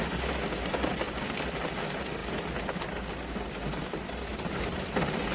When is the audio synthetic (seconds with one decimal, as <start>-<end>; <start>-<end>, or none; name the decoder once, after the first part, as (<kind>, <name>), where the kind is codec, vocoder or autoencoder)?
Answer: none